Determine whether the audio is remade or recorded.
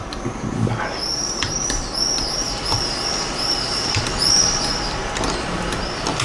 remade